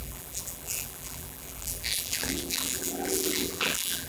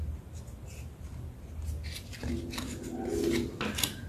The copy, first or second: first